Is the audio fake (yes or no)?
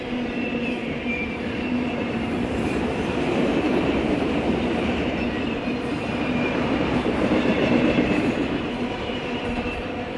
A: yes